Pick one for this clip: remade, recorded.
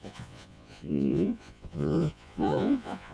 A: remade